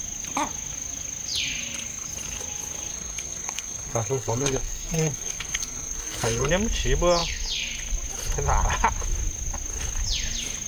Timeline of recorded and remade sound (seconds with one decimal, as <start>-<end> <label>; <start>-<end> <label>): 0.0-2.9 recorded; 2.9-6.5 remade; 6.5-10.7 recorded